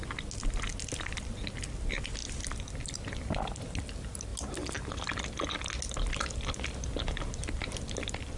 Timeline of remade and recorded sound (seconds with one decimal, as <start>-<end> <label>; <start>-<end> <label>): 0.0-8.4 recorded